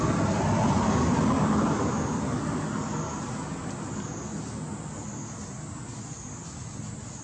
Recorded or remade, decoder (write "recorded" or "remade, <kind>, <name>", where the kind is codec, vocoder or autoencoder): recorded